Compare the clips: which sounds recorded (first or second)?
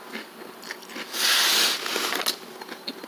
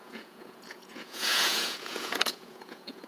first